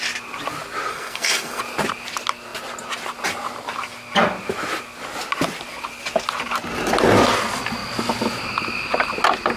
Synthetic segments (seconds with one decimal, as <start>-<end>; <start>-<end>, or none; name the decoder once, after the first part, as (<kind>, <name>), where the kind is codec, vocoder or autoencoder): 0.9-1.6 (codec, SNAC)